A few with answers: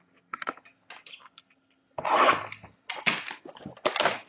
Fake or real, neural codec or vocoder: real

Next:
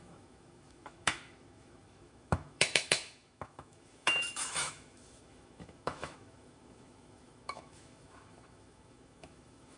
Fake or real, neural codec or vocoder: fake, autoencoder, DAC-VAE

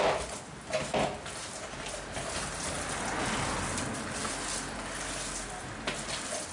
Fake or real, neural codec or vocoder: real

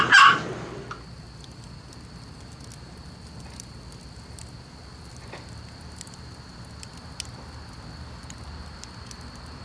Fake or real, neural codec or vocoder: real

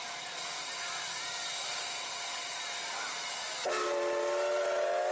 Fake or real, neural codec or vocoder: real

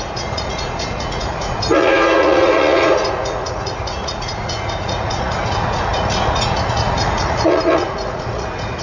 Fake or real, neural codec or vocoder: fake, vocoder, Vocos